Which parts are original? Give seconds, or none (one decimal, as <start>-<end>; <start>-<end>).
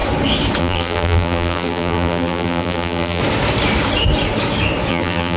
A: 0.0-0.6; 3.2-4.9